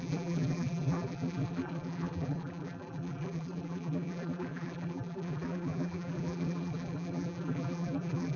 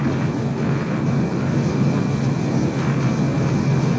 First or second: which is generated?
first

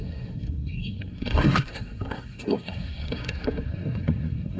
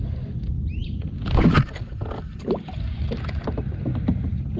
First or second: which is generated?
first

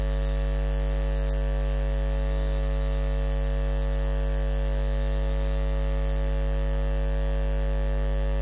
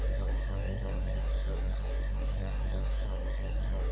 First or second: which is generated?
second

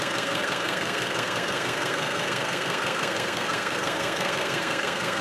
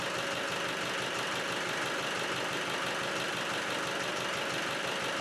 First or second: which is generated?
first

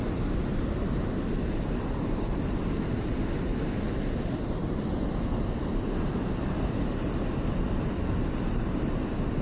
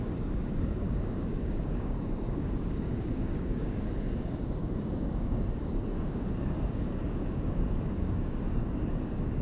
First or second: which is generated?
second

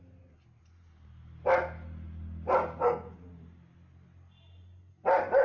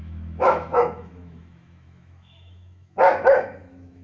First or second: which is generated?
second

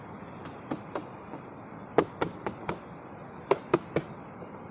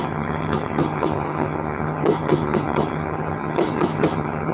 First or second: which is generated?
second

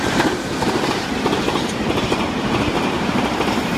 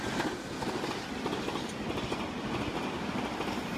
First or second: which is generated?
first